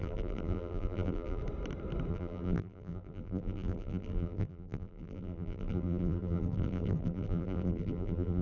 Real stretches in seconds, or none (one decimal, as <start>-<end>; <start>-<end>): 1.4-2.1

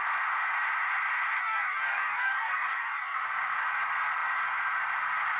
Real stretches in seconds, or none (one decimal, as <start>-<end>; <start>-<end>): 0.0-1.4; 3.2-5.4

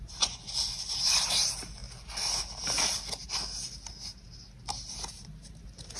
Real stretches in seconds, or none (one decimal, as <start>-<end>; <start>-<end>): 1.8-5.1

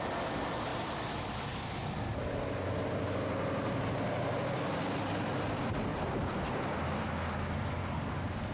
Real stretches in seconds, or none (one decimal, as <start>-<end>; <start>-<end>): 0.0-8.5